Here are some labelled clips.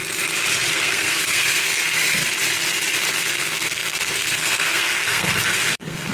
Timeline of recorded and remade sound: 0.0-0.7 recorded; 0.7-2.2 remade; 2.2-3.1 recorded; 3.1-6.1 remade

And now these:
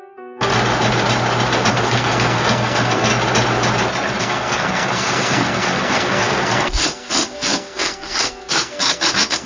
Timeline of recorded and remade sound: 0.0-0.5 remade; 0.5-1.7 recorded; 1.7-3.1 remade; 3.1-4.2 recorded; 4.2-9.5 remade

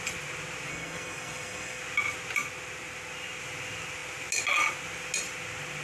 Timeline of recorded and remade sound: 0.0-0.7 recorded; 0.7-1.8 remade; 1.8-5.8 recorded